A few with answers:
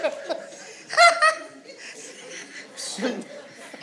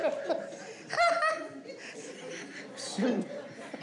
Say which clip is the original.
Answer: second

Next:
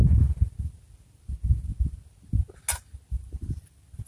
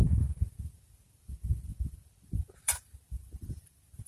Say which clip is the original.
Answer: first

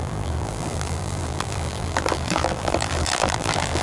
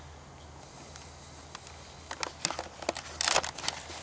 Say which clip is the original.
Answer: second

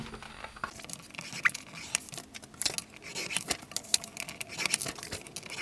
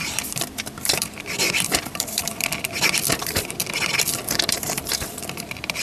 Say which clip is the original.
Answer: first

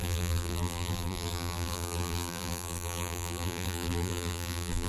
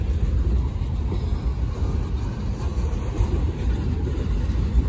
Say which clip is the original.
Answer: second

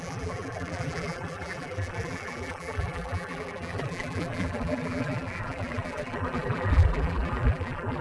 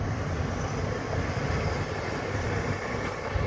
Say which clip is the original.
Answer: second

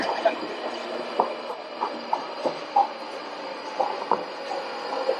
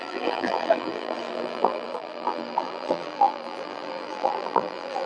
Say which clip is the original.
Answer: first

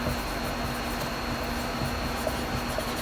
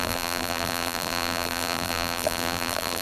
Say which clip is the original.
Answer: first